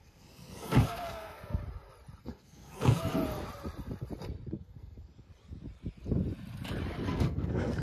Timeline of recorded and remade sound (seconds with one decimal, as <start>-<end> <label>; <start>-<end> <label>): 0.0-1.6 remade; 1.6-2.2 recorded; 2.2-3.2 remade; 3.2-4.5 recorded; 4.5-5.3 remade; 5.3-7.1 recorded; 7.1-7.8 remade